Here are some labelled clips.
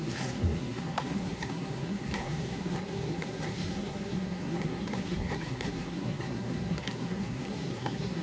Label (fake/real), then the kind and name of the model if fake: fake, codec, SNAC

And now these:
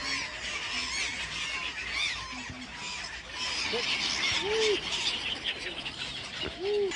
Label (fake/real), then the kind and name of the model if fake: real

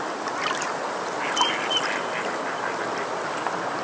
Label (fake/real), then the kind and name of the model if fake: fake, vocoder, BigVGAN v2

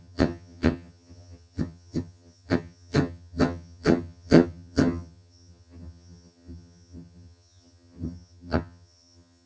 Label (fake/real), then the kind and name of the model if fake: fake, vocoder, HiFi-GAN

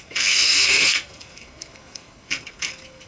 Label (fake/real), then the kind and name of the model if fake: fake, codec, SNAC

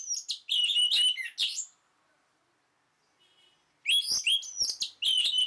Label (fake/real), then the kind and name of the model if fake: real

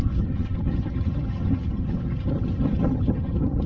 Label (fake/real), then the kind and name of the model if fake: fake, vocoder, HiFi-GAN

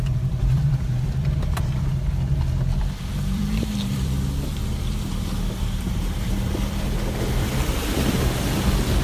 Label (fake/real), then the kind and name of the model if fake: fake, vocoder, BigVGAN v2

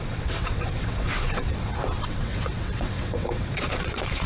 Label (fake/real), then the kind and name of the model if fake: fake, vocoder, WaveNeXt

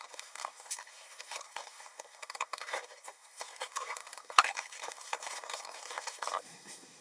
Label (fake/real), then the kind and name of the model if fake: fake, codec, SNAC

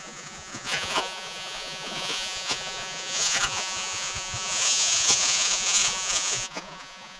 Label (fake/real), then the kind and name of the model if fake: fake, vocoder, Vocos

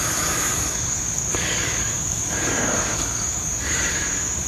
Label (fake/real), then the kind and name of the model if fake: fake, codec, DAC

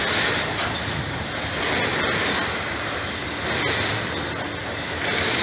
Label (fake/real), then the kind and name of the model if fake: real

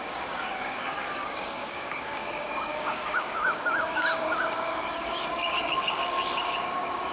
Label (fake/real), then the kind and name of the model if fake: fake, codec, DAC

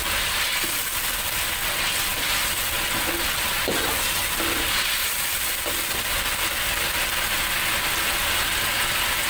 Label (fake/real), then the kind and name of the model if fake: real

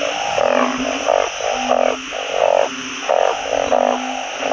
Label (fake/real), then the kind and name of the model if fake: real